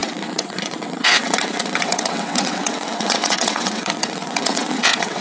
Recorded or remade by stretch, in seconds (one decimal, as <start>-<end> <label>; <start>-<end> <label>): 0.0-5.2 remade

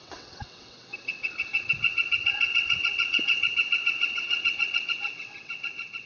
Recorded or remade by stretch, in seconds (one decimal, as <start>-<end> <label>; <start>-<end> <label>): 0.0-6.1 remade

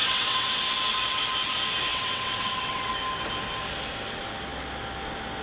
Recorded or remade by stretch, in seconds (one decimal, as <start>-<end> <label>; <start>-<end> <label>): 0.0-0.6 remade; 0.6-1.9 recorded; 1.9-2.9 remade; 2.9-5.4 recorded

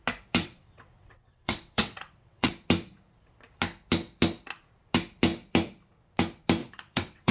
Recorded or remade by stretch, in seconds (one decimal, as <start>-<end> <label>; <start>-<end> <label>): 0.0-0.4 recorded; 0.4-2.5 remade; 2.5-6.6 recorded; 6.6-7.3 remade

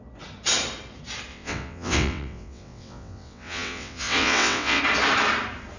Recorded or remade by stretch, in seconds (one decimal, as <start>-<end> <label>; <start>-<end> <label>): 0.0-1.3 recorded; 1.3-4.8 remade; 4.8-5.8 recorded

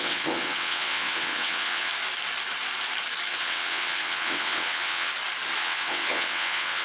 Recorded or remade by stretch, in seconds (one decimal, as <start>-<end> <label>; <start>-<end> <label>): 0.0-1.9 remade; 1.9-3.3 recorded; 3.3-5.1 remade; 5.1-5.6 recorded; 5.6-6.8 remade

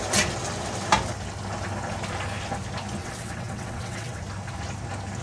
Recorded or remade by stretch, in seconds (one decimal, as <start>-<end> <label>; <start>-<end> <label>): 0.0-3.0 recorded; 3.0-4.2 remade; 4.2-5.2 recorded

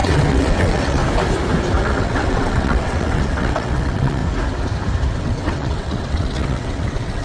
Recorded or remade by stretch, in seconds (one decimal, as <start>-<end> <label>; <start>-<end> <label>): 0.0-1.0 remade; 1.0-1.8 recorded; 1.8-4.2 remade; 4.2-5.2 recorded; 5.2-7.2 remade